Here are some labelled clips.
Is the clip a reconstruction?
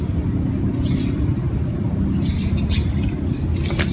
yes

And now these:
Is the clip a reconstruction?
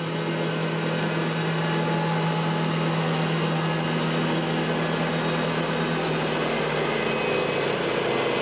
no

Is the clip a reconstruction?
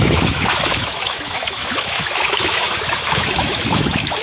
yes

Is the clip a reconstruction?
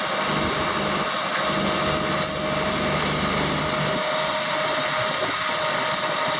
no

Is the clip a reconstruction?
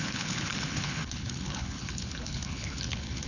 yes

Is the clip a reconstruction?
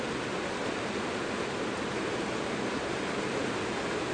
no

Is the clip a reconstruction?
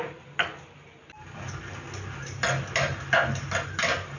no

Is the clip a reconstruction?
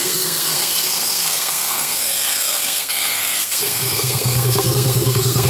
yes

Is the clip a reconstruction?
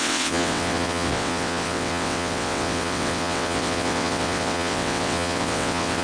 yes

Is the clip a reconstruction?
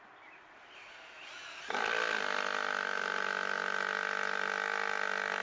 no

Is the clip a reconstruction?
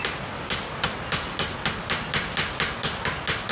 no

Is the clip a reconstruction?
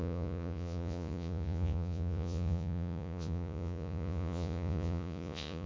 yes